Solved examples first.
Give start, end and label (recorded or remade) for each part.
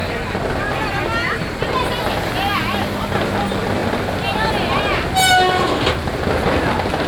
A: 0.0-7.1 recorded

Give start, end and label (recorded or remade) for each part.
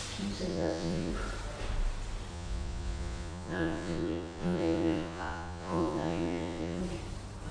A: 0.0-0.5 recorded; 0.5-1.1 remade; 1.1-2.3 recorded; 2.3-6.8 remade; 6.8-7.5 recorded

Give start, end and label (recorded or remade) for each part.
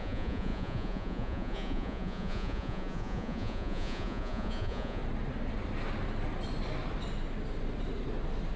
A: 0.0-5.0 remade; 5.0-8.6 recorded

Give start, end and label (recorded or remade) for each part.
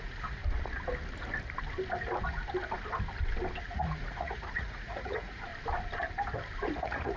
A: 0.0-0.4 remade; 0.4-3.6 recorded; 3.6-5.5 remade; 5.5-6.8 recorded; 6.8-7.2 remade